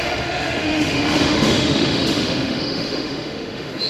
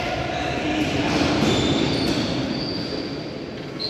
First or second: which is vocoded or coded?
first